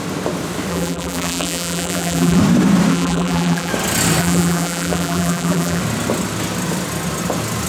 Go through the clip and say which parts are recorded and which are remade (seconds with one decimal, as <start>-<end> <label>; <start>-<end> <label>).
0.0-0.7 recorded; 0.7-2.4 remade; 2.4-2.9 recorded; 2.9-3.7 remade; 3.7-4.2 recorded; 4.2-5.8 remade; 5.8-7.7 recorded